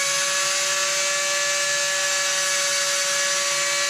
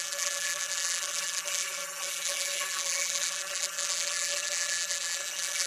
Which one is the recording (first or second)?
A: first